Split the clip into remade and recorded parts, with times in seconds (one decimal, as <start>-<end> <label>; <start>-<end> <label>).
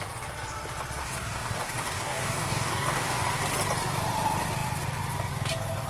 0.0-1.0 recorded; 1.0-3.4 remade; 3.4-5.9 recorded